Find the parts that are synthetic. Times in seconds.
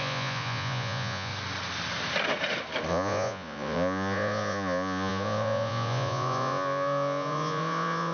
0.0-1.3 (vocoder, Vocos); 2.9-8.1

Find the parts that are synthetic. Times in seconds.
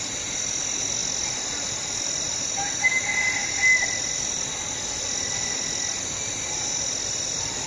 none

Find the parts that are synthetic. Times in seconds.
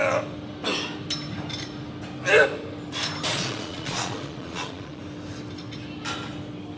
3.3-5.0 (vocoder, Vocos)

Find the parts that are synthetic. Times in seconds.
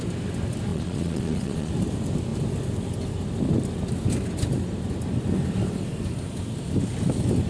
0.7-1.7 (vocoder, Vocos)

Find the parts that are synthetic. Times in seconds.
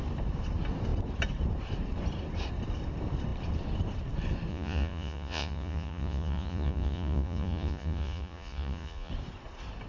4.5-9.1 (vocoder, Vocos)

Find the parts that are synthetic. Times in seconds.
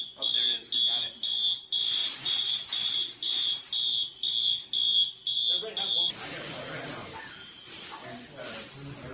2.0-2.7 (vocoder, Vocos)